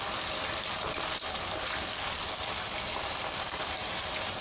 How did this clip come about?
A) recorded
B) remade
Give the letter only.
A